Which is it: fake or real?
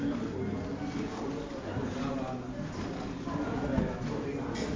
real